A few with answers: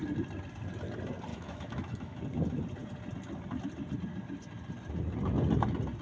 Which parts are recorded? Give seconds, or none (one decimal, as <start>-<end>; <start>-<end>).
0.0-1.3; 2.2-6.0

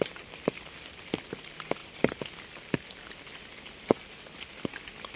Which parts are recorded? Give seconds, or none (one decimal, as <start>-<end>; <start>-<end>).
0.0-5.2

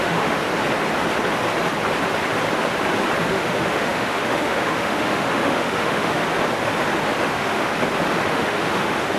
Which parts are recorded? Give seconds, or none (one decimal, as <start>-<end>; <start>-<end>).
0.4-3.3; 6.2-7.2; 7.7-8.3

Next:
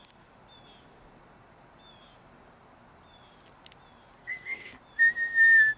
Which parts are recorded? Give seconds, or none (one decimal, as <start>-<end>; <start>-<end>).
0.0-4.2; 4.8-5.8